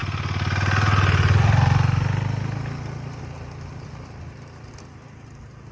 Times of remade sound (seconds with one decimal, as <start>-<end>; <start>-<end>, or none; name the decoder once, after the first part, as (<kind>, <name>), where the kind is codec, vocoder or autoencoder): none